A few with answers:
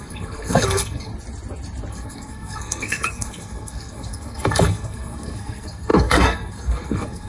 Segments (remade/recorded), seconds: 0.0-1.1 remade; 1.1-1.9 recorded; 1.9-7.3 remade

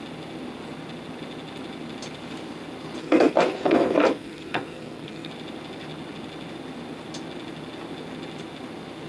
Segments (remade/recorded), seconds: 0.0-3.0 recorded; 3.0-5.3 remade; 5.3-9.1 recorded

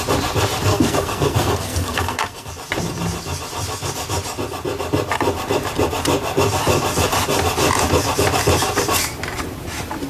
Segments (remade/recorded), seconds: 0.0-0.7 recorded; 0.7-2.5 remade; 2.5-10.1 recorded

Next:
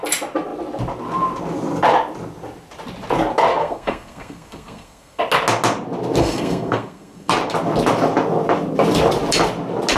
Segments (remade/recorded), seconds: 0.0-3.6 recorded; 3.6-5.2 remade; 5.2-6.2 recorded; 6.2-7.3 remade; 7.3-10.0 recorded